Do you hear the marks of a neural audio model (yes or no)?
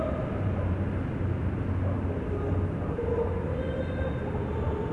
no